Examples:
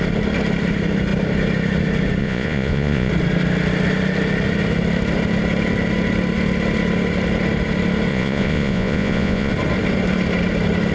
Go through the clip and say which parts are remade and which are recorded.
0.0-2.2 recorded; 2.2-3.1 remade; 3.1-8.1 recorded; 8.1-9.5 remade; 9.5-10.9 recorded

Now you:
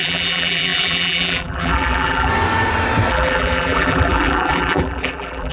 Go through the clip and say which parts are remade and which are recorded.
0.0-2.3 remade; 2.3-3.1 recorded; 3.1-5.5 remade

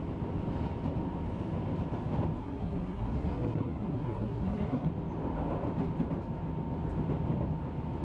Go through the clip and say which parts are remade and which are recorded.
0.0-2.4 recorded; 2.4-4.9 remade; 4.9-8.0 recorded

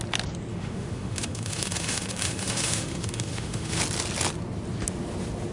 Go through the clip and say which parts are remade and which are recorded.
0.0-0.5 recorded; 0.5-3.8 remade; 3.8-5.5 recorded

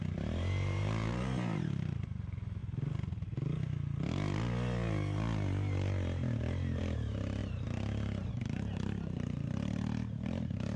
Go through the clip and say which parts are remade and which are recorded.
0.0-2.6 remade; 2.6-6.8 recorded; 6.8-7.4 remade; 7.4-8.3 recorded; 8.3-10.8 remade

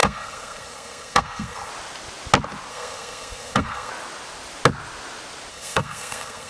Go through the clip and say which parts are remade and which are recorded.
0.0-1.7 remade; 1.7-2.7 recorded; 2.7-3.9 remade; 3.9-5.5 recorded; 5.5-6.5 remade

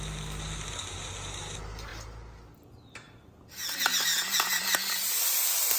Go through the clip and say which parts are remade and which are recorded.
0.0-5.8 recorded

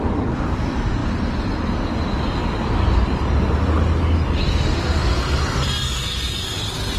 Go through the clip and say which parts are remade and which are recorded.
0.0-7.0 recorded